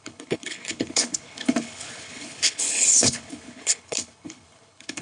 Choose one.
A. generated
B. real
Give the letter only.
A